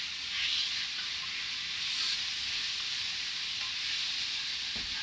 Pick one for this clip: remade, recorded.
recorded